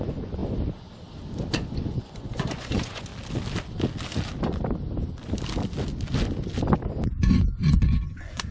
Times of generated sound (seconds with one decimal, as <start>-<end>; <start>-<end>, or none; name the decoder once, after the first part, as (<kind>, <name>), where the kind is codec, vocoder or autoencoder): 0.0-0.4 (vocoder, Vocos); 1.5-3.1; 7.1-8.5